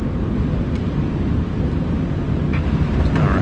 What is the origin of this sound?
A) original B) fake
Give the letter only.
A